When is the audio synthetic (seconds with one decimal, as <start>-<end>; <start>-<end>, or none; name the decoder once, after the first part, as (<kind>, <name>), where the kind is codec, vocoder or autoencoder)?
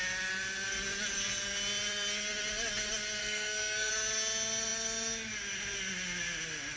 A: 3.2-3.9 (codec, SNAC)